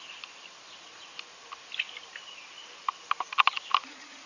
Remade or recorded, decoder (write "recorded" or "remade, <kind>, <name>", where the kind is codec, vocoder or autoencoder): recorded